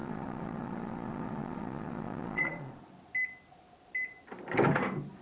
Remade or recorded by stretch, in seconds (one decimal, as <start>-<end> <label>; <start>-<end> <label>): 0.0-2.8 remade; 2.8-5.2 recorded